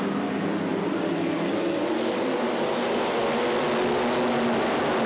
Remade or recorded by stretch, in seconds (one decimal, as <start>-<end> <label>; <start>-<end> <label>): 0.0-5.1 recorded